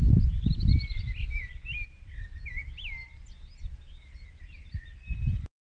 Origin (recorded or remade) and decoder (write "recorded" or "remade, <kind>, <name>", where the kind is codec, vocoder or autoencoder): recorded